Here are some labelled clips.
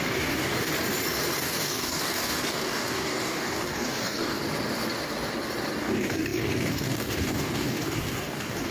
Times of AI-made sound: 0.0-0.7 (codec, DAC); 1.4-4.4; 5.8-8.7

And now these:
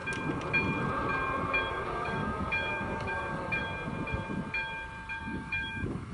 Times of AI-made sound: 1.7-3.6 (codec, DAC); 5.2-6.1